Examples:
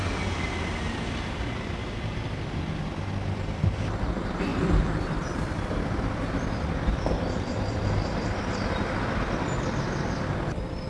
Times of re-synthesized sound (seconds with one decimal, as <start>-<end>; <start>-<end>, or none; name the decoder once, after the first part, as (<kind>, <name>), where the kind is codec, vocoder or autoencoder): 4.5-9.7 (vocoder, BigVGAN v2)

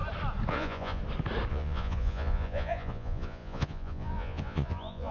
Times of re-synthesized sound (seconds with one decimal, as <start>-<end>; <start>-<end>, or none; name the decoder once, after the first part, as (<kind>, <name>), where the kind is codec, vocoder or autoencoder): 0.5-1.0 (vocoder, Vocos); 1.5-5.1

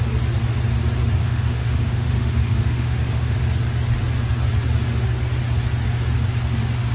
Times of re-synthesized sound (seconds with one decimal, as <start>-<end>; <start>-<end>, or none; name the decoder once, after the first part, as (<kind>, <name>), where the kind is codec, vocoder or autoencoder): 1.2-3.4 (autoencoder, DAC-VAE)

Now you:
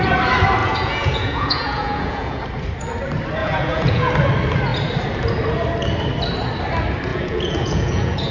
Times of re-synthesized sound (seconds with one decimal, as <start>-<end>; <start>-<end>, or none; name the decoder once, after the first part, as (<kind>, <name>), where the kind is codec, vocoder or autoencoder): 0.6-2.4 (vocoder, Vocos); 3.4-4.1; 7.1-8.3

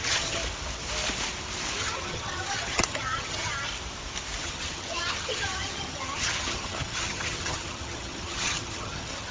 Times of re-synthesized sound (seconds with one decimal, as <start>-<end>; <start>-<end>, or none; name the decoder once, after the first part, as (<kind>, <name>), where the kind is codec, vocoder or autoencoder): 0.0-0.4 (vocoder, HiFi-GAN); 1.8-3.7; 4.4-9.3